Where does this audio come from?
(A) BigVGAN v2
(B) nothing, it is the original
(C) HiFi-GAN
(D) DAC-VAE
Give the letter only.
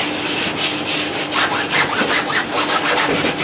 B